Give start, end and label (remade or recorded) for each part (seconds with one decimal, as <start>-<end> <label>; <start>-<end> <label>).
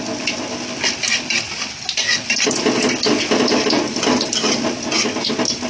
0.0-5.7 recorded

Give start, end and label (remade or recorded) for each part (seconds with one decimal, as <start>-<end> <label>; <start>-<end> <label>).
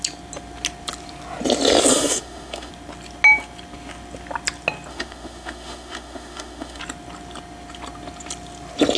0.0-1.9 recorded; 1.9-2.7 remade; 2.7-4.9 recorded; 4.9-6.8 remade; 6.8-9.0 recorded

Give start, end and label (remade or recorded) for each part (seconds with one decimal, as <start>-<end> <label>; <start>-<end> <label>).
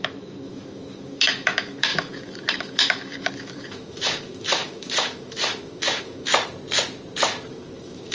0.0-6.3 remade; 6.3-7.5 recorded; 7.5-8.1 remade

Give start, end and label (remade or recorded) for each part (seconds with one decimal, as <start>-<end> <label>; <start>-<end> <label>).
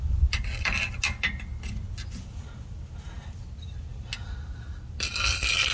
0.0-5.7 recorded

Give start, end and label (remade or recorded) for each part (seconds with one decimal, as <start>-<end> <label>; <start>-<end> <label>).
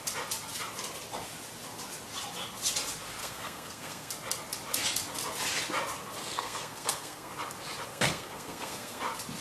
0.0-3.2 recorded; 3.2-4.1 remade; 4.1-6.2 recorded; 6.2-7.3 remade; 7.3-7.9 recorded; 7.9-9.0 remade; 9.0-9.4 recorded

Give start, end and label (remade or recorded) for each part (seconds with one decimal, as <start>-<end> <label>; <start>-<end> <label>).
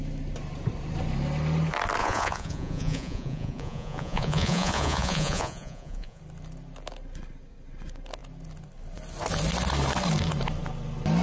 0.0-2.0 recorded; 2.0-6.2 remade; 6.2-11.2 recorded